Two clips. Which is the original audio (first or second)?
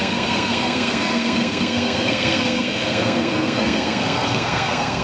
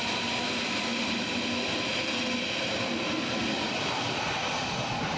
second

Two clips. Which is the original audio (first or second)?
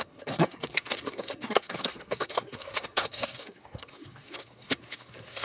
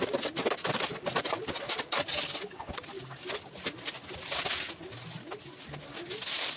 second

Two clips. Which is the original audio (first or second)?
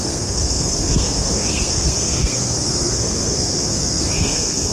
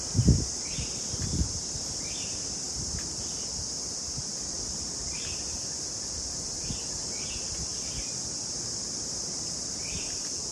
second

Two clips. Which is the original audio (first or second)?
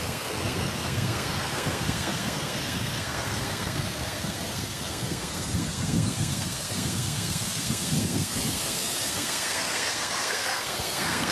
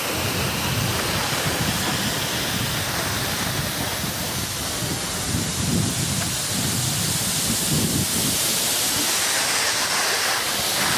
second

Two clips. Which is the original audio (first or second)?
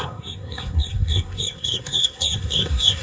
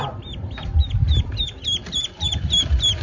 second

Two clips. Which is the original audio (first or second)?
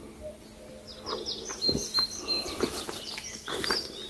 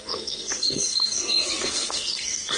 first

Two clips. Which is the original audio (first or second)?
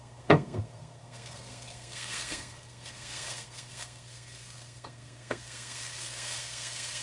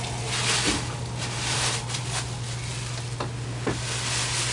second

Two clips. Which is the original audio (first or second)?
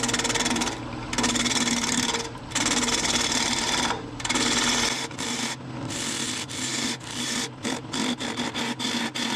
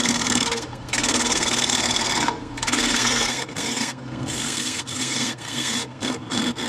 first